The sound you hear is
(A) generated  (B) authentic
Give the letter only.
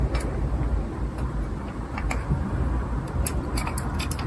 B